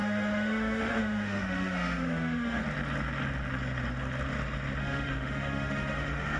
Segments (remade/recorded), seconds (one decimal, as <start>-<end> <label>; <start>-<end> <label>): 0.0-2.6 remade; 2.6-4.8 recorded; 4.8-6.4 remade

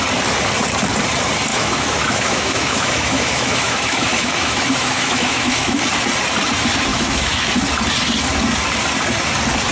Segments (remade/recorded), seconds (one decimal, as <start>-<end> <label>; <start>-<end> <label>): 0.0-1.5 recorded; 1.5-5.8 remade; 5.8-6.9 recorded; 6.9-7.5 remade; 7.5-9.7 recorded